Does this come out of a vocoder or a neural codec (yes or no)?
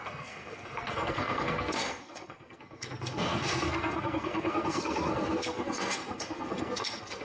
yes